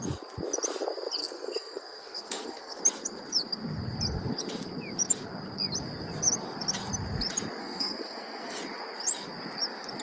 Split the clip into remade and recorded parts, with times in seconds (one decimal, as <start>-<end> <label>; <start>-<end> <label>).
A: 0.0-1.2 recorded; 1.2-2.8 remade; 2.8-7.6 recorded; 7.6-8.6 remade; 8.6-10.0 recorded